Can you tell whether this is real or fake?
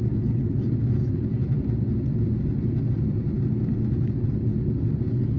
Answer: real